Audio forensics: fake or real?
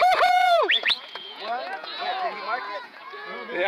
fake